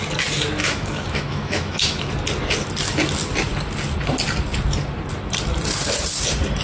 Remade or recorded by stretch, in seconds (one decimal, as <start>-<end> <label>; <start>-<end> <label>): 0.0-0.6 recorded; 0.6-2.1 remade; 2.1-6.6 recorded